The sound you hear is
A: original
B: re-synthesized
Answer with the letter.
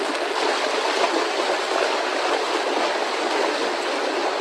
A